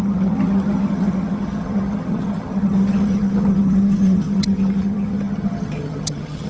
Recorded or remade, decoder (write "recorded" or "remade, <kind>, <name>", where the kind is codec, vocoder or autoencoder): remade, vocoder, HiFi-GAN